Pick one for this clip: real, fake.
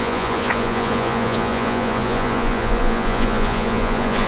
fake